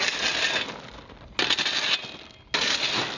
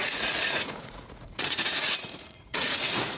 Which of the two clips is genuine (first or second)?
first